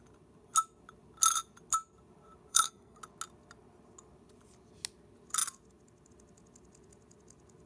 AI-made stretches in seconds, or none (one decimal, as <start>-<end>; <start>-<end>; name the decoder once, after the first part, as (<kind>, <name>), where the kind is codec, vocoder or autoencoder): 2.5-3.0 (codec, SNAC)